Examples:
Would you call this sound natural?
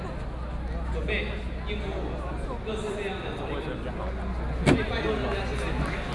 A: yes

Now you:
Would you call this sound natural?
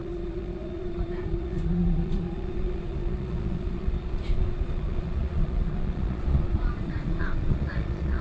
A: no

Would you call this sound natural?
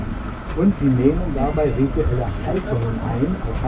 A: yes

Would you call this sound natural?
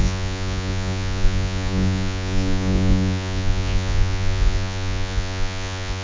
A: no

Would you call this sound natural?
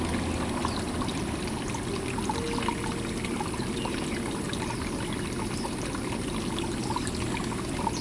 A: yes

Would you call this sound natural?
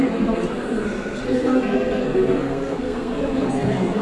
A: no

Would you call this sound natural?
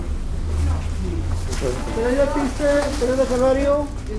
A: yes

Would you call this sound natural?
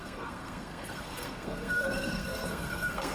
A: no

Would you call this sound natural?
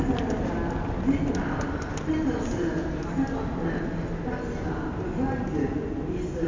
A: yes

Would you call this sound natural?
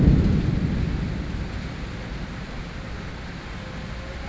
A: yes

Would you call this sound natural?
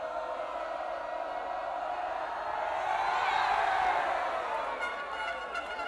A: yes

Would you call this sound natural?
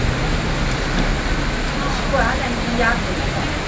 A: yes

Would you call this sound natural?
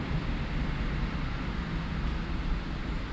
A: yes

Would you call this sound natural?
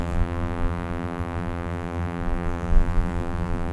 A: no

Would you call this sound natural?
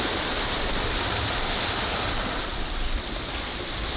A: yes